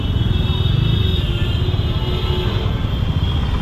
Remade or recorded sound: recorded